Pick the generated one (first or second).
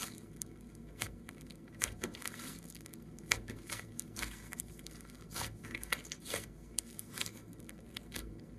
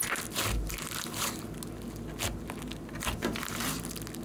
first